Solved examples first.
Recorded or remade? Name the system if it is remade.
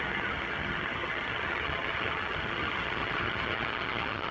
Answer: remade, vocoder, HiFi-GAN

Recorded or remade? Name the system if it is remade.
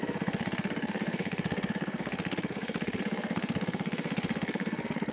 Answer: remade, codec, SNAC